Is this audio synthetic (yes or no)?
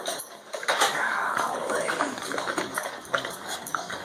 yes